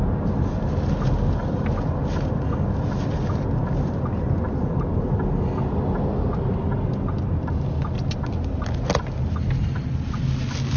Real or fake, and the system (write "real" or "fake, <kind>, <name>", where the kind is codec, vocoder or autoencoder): real